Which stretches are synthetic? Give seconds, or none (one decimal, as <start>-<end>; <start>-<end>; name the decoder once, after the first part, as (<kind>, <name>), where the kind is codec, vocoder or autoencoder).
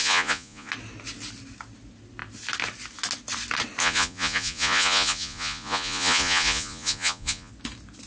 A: 0.0-0.7 (vocoder, Vocos); 3.8-7.5